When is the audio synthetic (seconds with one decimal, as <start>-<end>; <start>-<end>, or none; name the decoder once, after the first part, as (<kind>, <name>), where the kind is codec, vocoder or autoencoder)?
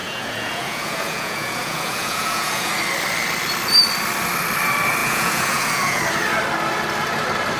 0.0-2.7 (vocoder, Vocos); 5.0-6.0